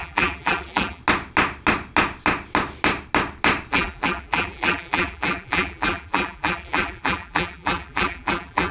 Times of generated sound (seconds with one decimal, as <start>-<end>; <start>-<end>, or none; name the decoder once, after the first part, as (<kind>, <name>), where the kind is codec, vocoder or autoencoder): 0.0-1.0 (vocoder, BigVGAN v2); 3.7-8.7